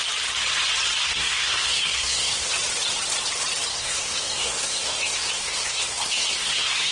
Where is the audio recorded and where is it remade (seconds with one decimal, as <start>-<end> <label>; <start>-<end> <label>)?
0.0-1.0 recorded; 1.0-2.5 remade; 2.5-3.7 recorded; 3.7-6.9 remade

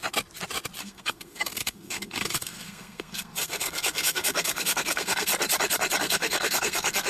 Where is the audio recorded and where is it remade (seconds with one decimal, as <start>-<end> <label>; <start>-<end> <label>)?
0.0-0.8 recorded; 0.8-5.3 remade; 5.3-6.0 recorded; 6.0-7.1 remade

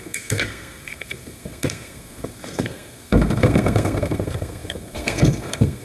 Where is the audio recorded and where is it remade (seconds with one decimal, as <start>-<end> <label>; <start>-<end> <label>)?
0.0-5.8 remade

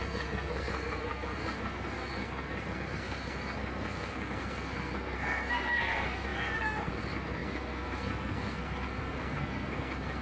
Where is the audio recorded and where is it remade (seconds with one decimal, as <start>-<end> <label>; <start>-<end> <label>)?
0.0-10.2 remade

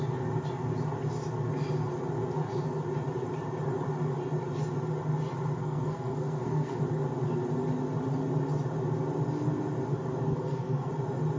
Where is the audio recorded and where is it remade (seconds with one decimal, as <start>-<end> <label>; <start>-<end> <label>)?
0.0-5.6 recorded; 5.6-6.8 remade; 6.8-10.3 recorded; 10.3-10.9 remade; 10.9-11.4 recorded

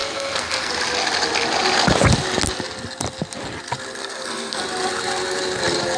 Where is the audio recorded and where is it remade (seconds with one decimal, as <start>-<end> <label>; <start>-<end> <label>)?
0.0-0.7 remade; 0.7-4.0 recorded; 4.0-4.6 remade; 4.6-6.0 recorded

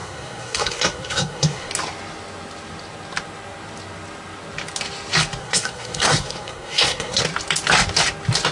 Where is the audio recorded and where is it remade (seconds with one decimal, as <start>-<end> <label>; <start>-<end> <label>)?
0.0-1.7 remade; 1.7-5.4 recorded; 5.4-7.2 remade; 7.2-8.5 recorded

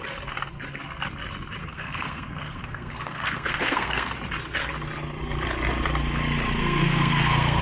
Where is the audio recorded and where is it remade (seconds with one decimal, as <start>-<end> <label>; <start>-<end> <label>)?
0.0-1.6 recorded; 1.6-4.1 remade; 4.1-6.6 recorded; 6.6-7.6 remade